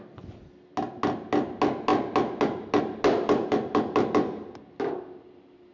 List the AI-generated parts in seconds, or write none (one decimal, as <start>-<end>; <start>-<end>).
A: none